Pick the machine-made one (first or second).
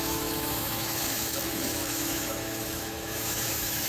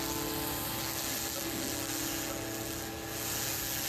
first